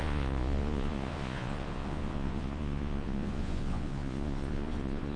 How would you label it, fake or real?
fake